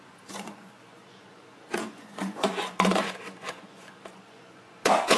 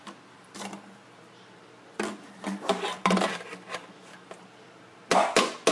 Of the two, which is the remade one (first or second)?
first